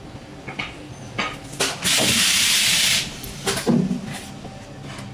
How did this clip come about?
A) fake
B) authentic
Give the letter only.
B